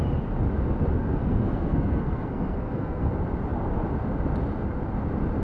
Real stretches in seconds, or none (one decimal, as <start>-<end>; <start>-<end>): 0.0-1.0; 3.1-5.4